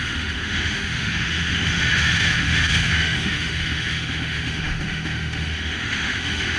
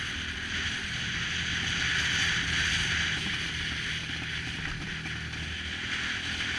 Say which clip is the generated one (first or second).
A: first